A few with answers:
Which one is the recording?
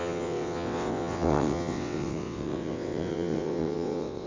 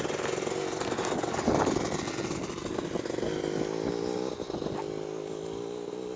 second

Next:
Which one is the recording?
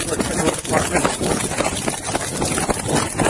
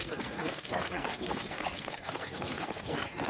first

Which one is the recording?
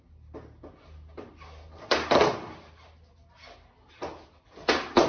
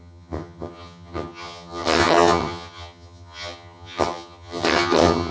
first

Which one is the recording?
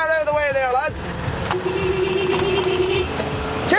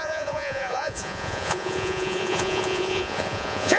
first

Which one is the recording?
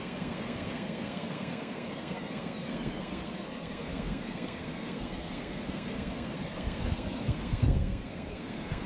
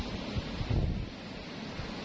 second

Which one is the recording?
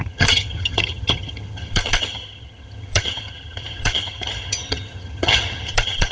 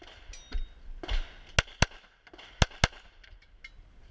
second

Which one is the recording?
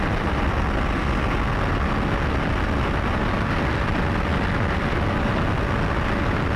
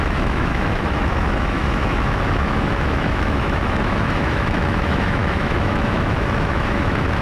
first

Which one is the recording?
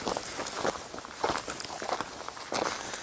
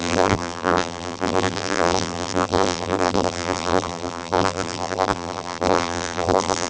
first